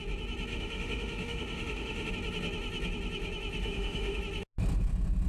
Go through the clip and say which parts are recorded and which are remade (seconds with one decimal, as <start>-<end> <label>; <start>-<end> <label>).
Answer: 0.0-0.5 recorded; 0.5-2.1 remade; 2.1-3.6 recorded; 3.6-4.2 remade; 4.2-5.3 recorded